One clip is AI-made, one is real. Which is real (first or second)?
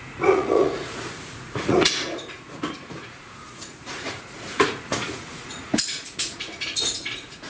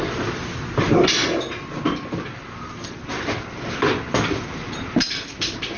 second